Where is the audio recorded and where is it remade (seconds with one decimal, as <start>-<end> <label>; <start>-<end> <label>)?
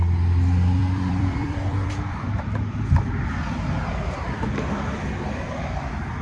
0.0-0.8 recorded; 0.8-3.1 remade; 3.1-6.2 recorded